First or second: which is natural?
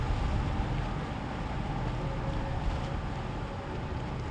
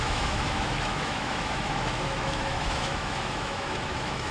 first